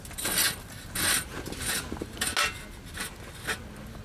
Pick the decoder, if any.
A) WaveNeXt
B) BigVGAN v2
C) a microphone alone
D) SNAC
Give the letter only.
C